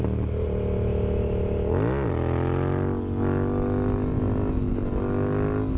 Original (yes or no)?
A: yes